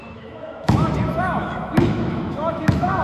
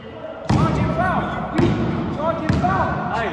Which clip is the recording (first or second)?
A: second